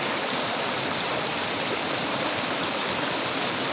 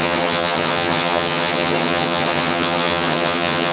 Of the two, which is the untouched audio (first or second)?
first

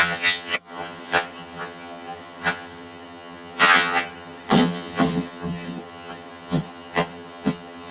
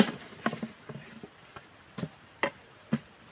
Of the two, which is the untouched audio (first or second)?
second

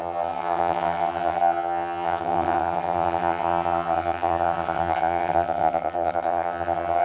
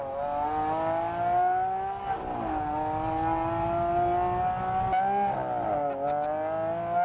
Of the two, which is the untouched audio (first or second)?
second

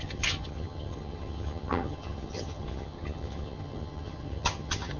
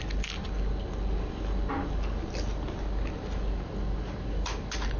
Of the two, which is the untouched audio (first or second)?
second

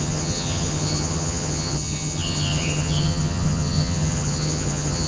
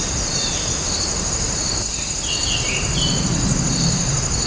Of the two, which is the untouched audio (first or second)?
second